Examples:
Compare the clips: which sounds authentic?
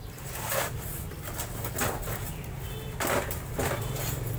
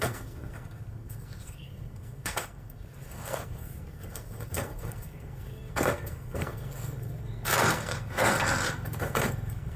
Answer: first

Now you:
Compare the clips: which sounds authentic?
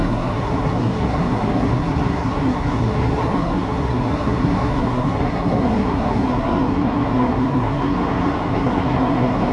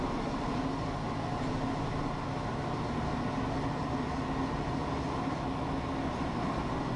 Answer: second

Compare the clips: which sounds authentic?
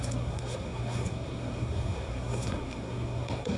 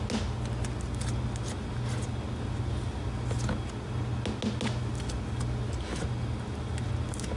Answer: second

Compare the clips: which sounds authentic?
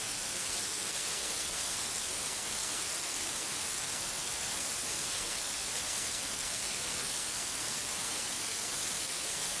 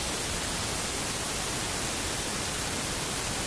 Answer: second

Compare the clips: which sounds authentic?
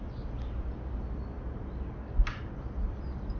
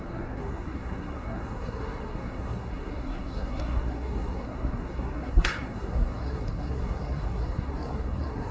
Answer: first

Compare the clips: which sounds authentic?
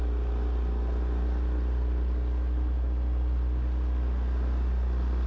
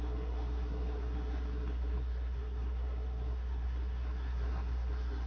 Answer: first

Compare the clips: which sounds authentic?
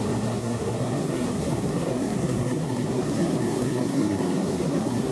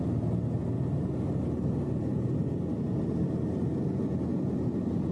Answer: second